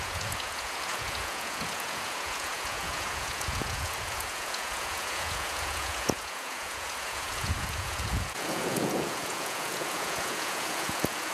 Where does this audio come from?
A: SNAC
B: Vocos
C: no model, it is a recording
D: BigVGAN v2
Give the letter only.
B